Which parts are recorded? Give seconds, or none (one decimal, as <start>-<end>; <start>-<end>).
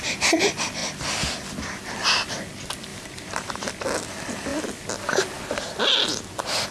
0.0-2.9; 3.7-6.7